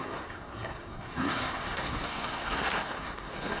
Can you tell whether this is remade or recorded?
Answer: remade